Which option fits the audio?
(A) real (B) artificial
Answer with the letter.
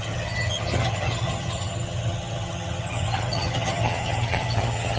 B